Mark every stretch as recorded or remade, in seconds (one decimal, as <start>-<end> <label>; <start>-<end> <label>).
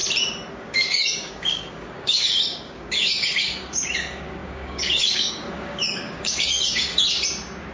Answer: 0.0-0.5 recorded; 0.5-7.0 remade; 7.0-7.7 recorded